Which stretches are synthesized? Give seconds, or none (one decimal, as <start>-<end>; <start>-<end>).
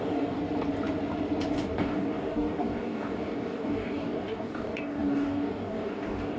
0.0-0.4; 1.5-6.4